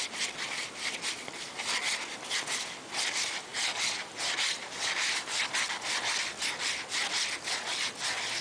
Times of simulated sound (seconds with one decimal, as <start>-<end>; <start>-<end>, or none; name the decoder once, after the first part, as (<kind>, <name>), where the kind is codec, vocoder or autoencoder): 0.0-8.4 (vocoder, BigVGAN v2)